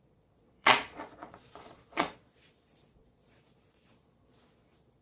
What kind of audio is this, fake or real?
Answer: fake